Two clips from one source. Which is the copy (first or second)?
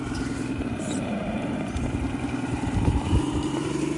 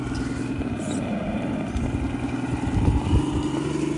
first